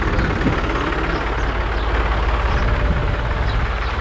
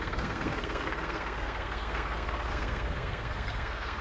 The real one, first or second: first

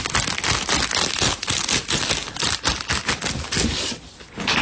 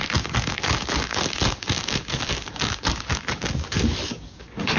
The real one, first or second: first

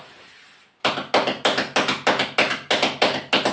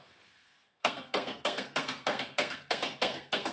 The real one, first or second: first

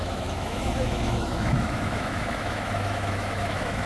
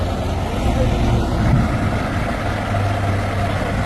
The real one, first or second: second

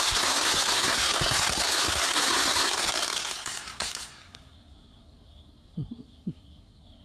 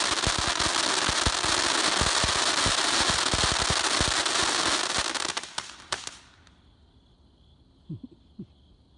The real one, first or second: second